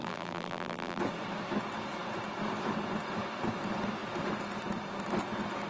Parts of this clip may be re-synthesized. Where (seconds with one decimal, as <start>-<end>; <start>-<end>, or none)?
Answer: 0.0-1.0